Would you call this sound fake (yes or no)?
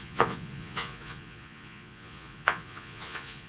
yes